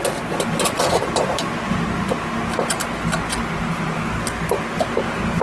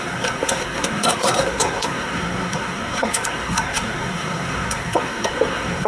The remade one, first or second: second